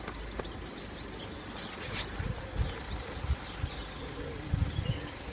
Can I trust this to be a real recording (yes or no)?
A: yes